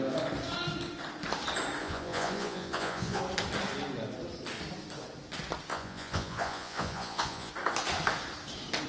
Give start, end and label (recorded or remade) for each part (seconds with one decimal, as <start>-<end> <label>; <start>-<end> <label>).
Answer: 0.0-1.8 recorded; 1.8-3.2 remade; 3.2-5.7 recorded; 5.7-7.5 remade; 7.5-8.9 recorded